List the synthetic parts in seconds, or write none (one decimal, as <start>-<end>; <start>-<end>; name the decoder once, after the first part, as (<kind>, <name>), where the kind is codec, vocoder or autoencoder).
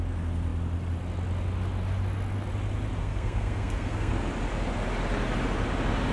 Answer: 3.0-4.1 (codec, SNAC)